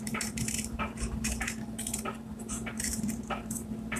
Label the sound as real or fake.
fake